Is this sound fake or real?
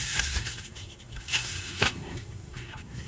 fake